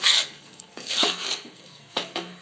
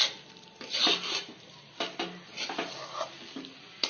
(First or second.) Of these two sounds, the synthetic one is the first